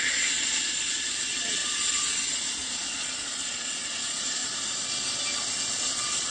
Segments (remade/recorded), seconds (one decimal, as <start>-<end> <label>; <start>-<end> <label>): 0.0-4.4 remade; 4.4-5.7 recorded; 5.7-6.3 remade